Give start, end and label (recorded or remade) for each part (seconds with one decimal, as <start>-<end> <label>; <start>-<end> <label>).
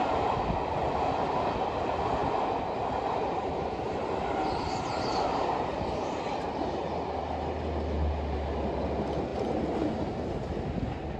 0.0-11.2 recorded